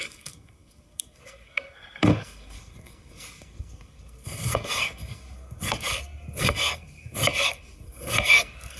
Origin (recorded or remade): remade